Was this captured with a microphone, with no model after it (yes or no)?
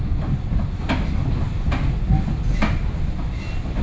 yes